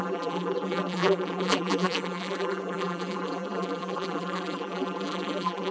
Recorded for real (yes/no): no